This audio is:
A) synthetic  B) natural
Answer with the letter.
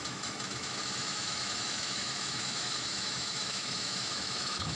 A